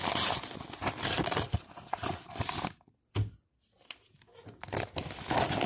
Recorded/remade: recorded